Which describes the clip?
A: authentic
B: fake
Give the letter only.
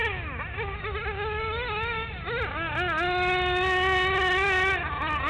A